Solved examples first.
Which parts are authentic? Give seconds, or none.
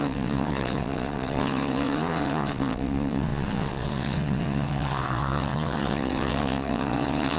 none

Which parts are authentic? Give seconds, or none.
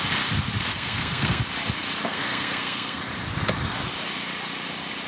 0.0-0.7; 1.4-2.1; 3.0-5.1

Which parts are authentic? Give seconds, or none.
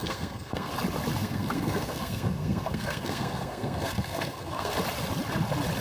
0.7-1.2; 4.7-5.8